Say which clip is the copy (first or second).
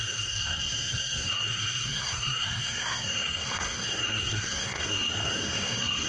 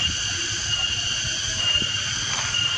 first